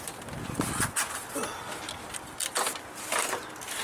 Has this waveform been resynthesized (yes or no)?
no